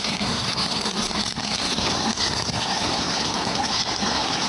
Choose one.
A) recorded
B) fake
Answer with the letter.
B